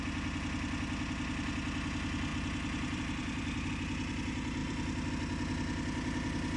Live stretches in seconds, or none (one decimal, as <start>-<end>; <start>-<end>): 0.0-2.3; 3.7-4.6; 5.1-6.6